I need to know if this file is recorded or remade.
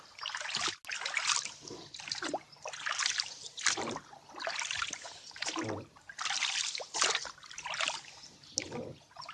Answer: recorded